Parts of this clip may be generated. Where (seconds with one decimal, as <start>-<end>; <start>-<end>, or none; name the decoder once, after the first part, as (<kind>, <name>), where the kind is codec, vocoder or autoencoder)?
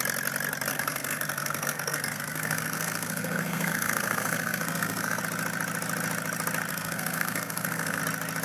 0.7-5.2 (codec, SNAC); 6.7-8.0